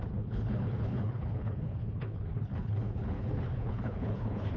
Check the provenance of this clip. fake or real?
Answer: fake